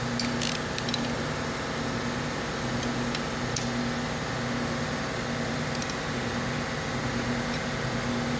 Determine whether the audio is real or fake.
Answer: real